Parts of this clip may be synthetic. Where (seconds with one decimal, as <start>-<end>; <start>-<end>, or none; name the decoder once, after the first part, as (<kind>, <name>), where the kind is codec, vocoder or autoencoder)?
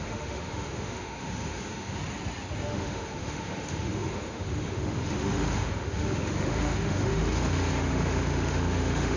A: 0.0-2.0 (autoencoder, DAC-VAE); 2.6-9.2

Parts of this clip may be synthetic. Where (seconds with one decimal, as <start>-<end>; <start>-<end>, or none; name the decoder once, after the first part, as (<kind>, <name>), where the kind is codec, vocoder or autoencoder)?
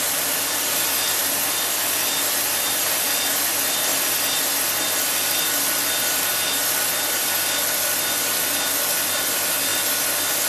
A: none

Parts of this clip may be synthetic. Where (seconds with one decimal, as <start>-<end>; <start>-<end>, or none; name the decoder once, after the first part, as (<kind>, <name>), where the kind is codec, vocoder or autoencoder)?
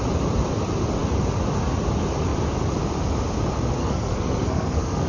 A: 3.8-5.1 (codec, SNAC)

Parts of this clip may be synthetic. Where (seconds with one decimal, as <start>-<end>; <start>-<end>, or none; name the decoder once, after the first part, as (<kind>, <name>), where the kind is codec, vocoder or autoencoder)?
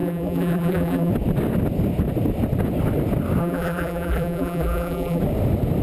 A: 0.0-1.1 (vocoder, BigVGAN v2); 3.4-5.2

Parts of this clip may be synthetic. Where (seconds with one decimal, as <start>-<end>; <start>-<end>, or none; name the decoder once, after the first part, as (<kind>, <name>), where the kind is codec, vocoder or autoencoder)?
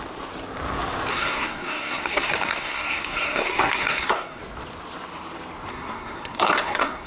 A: 1.1-4.4 (codec, SNAC); 5.7-7.1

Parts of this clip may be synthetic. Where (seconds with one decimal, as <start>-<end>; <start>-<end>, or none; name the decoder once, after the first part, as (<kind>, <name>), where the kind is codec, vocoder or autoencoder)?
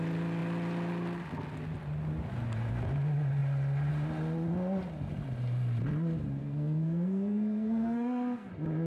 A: 6.4-8.5 (codec, SNAC)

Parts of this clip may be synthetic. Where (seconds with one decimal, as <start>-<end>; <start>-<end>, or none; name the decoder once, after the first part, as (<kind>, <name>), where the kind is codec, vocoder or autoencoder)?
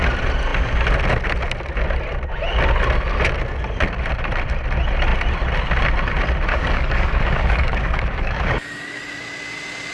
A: 6.5-9.0 (codec, DAC)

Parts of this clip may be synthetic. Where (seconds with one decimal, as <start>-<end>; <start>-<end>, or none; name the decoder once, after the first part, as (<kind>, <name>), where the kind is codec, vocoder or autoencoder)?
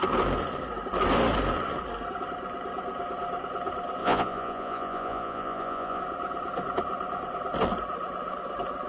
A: 4.0-6.0 (vocoder, Vocos)